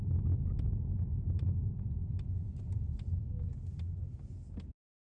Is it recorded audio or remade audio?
recorded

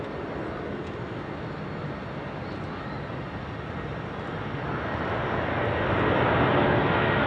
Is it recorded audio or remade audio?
recorded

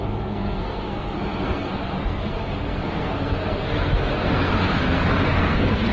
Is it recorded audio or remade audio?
remade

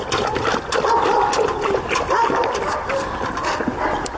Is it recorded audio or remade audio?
recorded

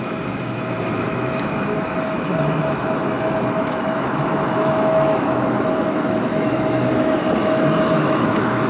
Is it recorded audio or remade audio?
remade